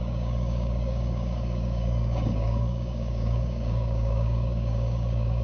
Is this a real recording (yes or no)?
no